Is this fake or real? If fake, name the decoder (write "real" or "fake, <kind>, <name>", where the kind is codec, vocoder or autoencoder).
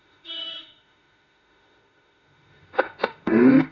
fake, autoencoder, DAC-VAE